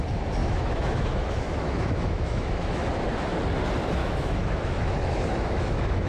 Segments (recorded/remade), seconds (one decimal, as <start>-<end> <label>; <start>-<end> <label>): 0.0-0.4 recorded; 0.4-2.9 remade; 2.9-4.0 recorded; 4.0-6.1 remade